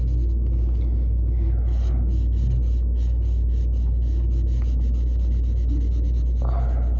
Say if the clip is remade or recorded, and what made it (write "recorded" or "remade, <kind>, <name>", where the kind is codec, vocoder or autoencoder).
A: recorded